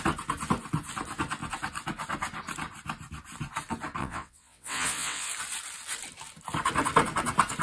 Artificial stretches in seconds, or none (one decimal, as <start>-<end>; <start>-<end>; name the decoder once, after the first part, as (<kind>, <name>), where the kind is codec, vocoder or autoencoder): 4.0-5.3 (vocoder, WaveNeXt)